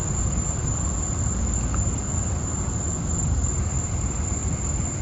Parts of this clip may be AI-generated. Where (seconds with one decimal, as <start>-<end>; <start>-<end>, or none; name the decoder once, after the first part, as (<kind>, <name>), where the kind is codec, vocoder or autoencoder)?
0.0-0.6 (vocoder, BigVGAN v2); 3.6-4.4

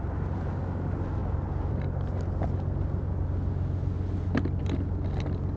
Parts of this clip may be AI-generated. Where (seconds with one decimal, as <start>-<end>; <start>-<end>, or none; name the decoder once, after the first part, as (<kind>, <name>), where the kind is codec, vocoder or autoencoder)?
none